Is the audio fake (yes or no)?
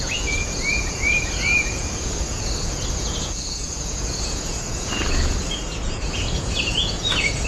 yes